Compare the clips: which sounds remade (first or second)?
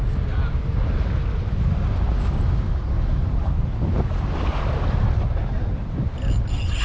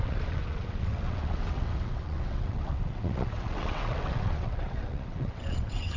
second